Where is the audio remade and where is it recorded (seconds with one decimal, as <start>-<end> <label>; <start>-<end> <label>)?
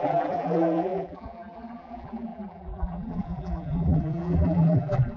0.0-5.2 remade